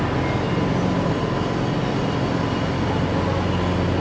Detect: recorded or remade recorded